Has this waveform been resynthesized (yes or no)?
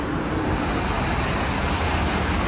no